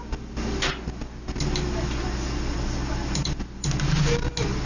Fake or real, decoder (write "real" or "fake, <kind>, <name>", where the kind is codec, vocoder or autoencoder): real